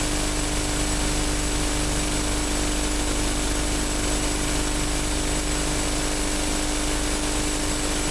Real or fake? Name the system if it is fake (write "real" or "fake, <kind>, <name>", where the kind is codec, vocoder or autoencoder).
fake, vocoder, BigVGAN v2